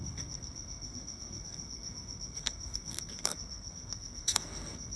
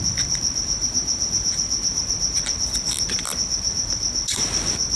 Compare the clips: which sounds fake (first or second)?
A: first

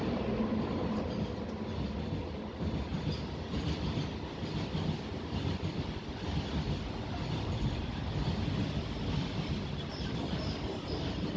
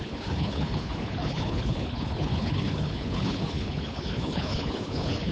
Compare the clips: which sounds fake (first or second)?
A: second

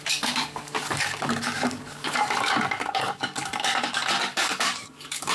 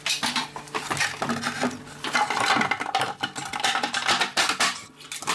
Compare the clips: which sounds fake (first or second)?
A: first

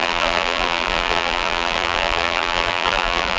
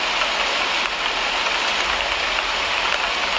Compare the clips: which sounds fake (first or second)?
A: first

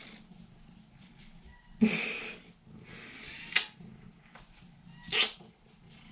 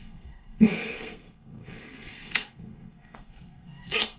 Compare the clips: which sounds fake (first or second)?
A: second